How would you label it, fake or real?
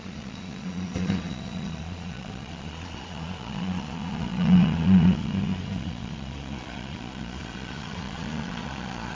fake